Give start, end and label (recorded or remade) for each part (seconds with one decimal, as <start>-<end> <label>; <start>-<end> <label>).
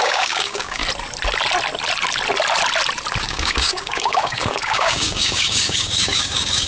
0.0-0.8 remade; 0.8-3.2 recorded; 3.2-6.7 remade